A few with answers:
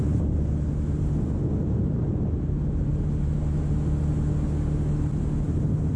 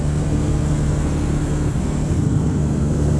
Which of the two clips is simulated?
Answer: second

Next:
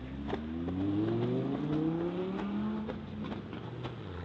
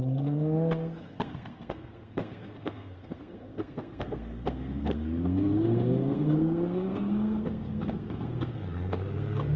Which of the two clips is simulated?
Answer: second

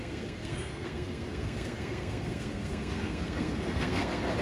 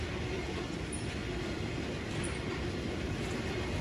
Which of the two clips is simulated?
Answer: first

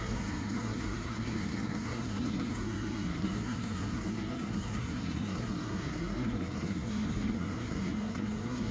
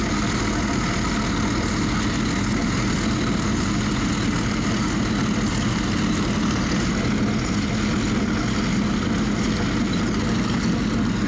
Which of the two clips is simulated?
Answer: first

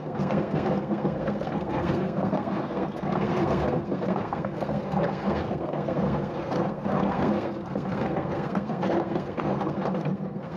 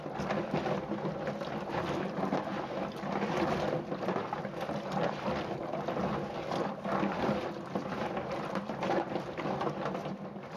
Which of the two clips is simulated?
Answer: first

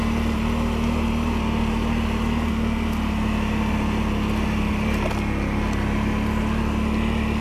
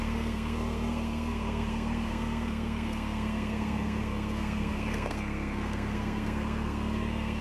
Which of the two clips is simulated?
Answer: second